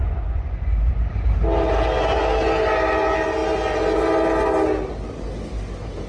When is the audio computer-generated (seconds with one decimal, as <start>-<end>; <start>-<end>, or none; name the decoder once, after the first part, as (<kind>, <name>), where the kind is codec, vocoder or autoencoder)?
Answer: 0.0-1.1 (vocoder, Vocos)